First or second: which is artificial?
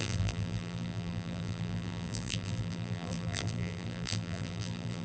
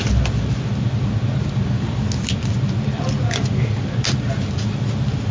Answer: first